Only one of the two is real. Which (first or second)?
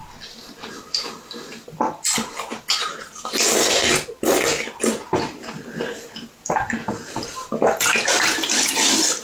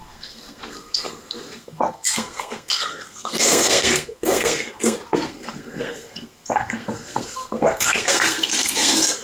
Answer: first